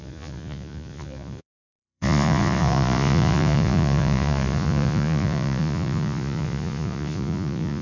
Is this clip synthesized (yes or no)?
yes